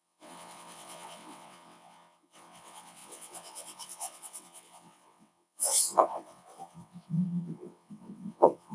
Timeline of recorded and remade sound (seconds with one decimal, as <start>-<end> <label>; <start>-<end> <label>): 0.0-8.7 remade